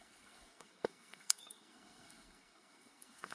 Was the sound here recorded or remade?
remade